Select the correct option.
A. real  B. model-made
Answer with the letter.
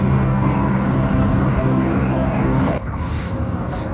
B